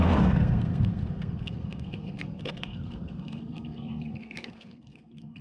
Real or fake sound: fake